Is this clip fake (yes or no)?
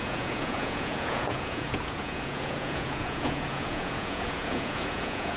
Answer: yes